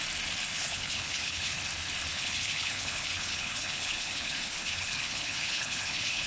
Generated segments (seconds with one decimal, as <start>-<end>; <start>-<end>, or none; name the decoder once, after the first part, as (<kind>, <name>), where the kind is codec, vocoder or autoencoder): 0.5-1.6 (codec, HILCodec); 2.1-6.3